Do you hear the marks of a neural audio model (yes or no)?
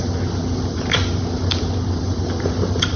no